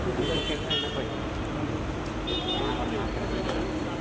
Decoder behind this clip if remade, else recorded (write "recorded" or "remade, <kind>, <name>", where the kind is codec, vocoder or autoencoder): recorded